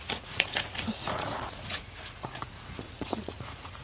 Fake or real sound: fake